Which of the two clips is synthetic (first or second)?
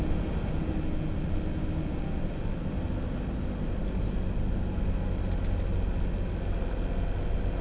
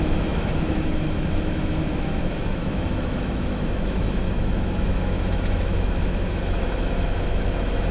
second